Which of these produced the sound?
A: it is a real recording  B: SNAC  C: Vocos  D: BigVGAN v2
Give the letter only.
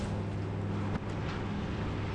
A